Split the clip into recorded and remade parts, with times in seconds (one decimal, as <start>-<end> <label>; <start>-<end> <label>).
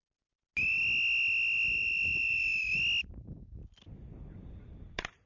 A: 0.0-3.2 recorded; 3.2-3.6 remade; 3.6-5.3 recorded